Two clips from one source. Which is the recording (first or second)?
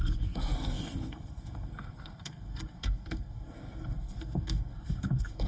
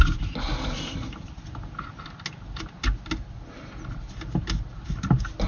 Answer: second